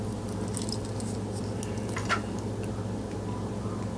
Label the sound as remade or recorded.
recorded